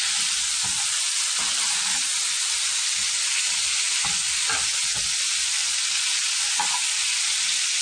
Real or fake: real